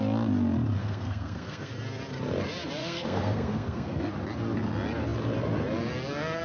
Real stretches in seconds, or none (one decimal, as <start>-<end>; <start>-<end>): 0.0-0.8; 1.7-2.8; 4.1-6.4